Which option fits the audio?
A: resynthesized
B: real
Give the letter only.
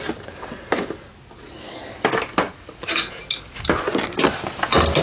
B